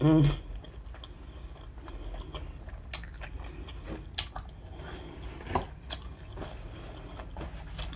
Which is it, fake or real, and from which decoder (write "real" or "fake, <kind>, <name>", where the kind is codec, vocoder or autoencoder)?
real